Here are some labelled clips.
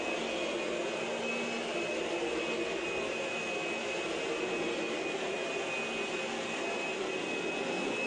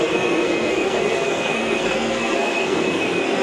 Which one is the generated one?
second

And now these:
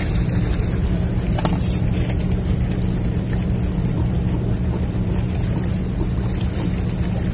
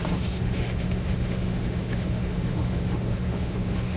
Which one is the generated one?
second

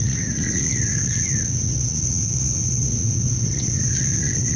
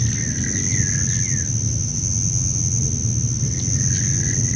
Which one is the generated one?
first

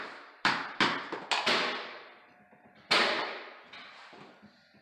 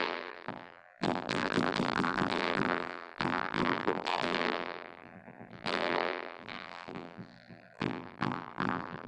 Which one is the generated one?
second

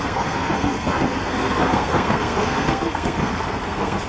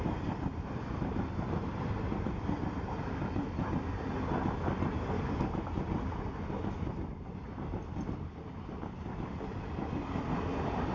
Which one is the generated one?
first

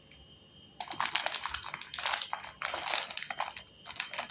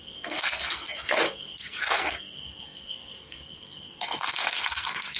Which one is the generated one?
second